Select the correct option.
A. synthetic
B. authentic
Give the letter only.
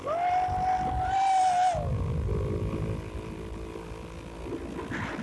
B